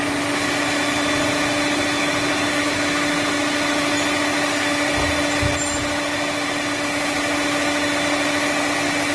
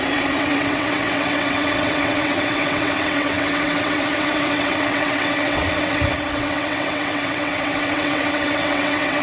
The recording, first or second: first